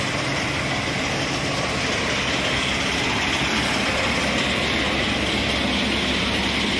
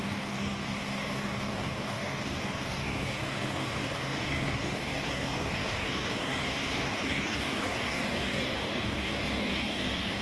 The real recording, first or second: first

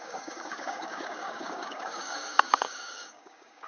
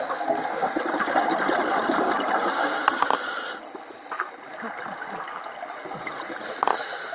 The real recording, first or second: second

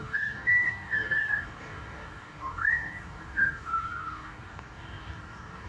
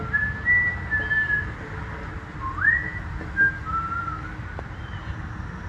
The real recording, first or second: second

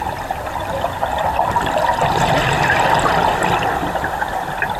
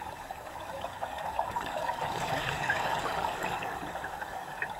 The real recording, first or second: first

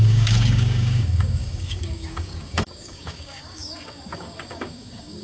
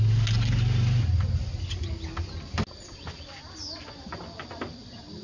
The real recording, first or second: second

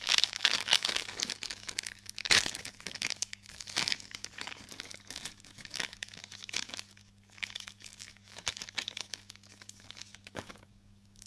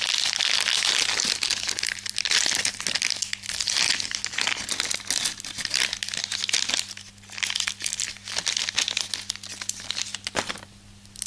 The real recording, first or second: second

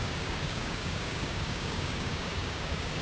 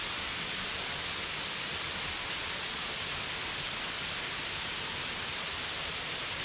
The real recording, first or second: second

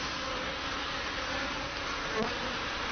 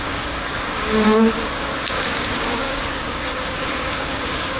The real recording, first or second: first